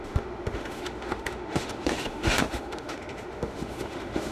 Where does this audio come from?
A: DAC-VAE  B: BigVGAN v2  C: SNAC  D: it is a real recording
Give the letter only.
A